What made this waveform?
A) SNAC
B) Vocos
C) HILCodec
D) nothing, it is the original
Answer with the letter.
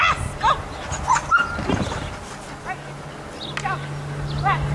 D